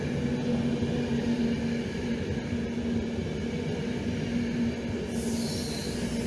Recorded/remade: recorded